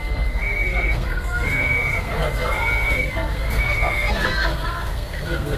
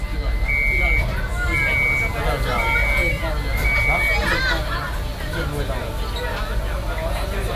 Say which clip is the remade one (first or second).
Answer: first